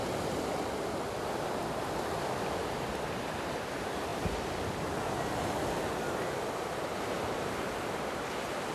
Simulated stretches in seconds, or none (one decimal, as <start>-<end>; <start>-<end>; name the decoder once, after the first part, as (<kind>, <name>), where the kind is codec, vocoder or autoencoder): 6.9-7.7 (vocoder, BigVGAN v2)